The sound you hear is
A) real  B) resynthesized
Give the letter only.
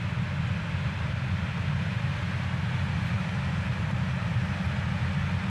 A